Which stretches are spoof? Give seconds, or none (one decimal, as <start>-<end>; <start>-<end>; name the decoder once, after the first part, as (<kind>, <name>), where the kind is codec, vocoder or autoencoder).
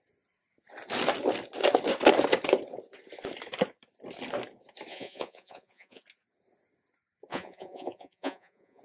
4.9-6.0 (vocoder, Vocos); 7.3-8.8